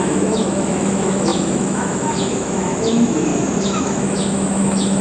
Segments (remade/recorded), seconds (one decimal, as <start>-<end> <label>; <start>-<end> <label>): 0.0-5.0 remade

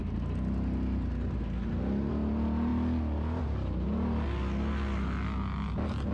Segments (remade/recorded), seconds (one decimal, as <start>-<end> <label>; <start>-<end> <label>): 0.0-6.1 recorded

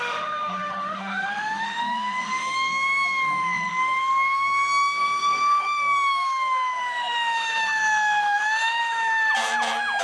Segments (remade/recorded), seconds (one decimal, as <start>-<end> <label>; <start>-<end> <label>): 0.0-9.3 remade; 9.3-10.0 recorded

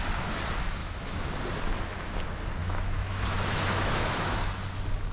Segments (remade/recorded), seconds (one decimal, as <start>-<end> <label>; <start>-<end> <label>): 0.0-0.8 recorded; 0.8-1.4 remade; 1.4-2.6 recorded; 2.6-4.4 remade; 4.4-5.1 recorded

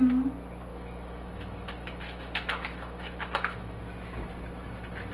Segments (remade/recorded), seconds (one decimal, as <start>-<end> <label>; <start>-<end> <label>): 0.0-0.7 recorded; 0.7-3.8 remade; 3.8-5.1 recorded

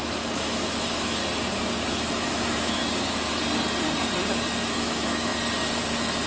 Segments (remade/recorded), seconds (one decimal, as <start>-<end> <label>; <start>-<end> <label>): 0.0-1.2 remade; 1.2-1.9 recorded; 1.9-2.8 remade; 2.8-4.6 recorded; 4.6-5.3 remade; 5.3-6.3 recorded